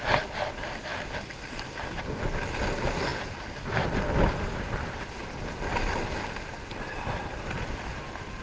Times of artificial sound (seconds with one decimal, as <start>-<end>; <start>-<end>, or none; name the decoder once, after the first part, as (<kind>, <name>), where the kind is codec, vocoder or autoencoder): none